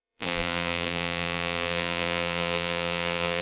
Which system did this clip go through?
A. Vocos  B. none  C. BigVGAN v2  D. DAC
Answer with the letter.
C